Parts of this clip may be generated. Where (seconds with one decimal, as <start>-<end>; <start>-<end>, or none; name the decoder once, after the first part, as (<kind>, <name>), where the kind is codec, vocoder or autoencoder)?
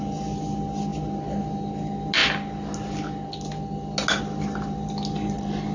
none